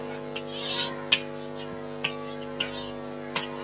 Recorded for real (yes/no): yes